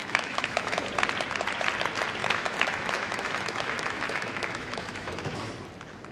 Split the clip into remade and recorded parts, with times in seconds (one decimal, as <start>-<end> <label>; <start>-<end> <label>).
0.0-0.8 remade; 0.8-2.2 recorded; 2.2-5.5 remade; 5.5-6.1 recorded